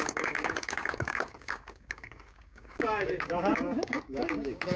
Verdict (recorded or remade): remade